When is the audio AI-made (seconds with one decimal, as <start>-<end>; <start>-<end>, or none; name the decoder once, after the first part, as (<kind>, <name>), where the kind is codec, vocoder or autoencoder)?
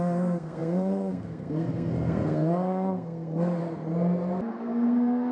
0.0-3.6 (codec, SNAC); 4.5-5.3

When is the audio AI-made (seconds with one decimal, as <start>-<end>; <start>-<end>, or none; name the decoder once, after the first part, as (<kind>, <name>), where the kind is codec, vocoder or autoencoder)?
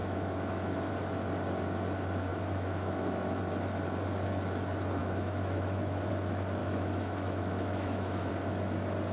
0.0-0.9 (autoencoder, DAC-VAE); 2.3-3.4; 5.0-6.1; 6.6-8.3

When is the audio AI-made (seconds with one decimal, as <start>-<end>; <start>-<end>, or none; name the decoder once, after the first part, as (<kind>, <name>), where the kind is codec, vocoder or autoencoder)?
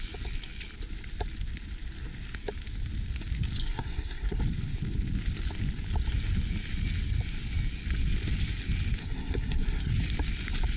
3.6-4.4 (codec, SNAC); 9.0-9.9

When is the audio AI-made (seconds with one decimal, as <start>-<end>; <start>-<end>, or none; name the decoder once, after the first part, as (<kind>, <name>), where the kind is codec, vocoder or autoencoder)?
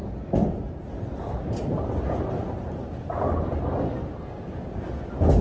none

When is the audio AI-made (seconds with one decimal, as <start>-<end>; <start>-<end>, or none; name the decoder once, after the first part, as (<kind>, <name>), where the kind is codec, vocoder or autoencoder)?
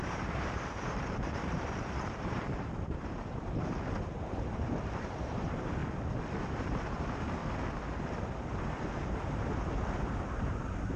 0.0-5.8 (vocoder, BigVGAN v2); 6.4-7.4; 8.8-11.0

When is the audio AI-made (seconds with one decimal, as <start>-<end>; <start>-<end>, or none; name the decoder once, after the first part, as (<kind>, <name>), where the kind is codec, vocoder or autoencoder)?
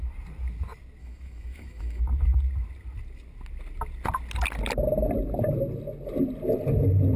1.0-2.0 (autoencoder, DAC-VAE)